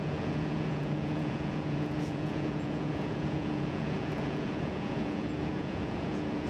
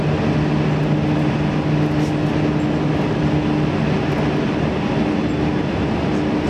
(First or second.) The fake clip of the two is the first